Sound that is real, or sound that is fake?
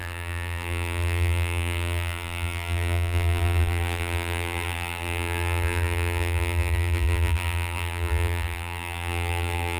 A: fake